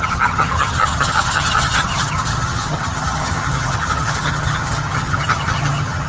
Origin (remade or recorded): remade